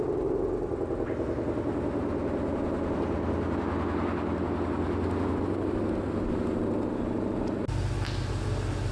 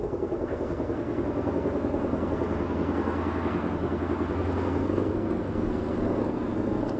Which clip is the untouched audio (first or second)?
first